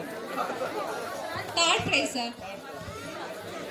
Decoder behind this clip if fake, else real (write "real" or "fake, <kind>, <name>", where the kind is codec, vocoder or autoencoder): real